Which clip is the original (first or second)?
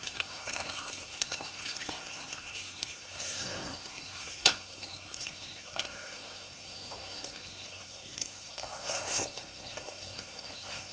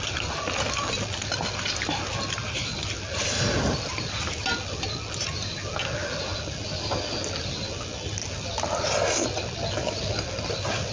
second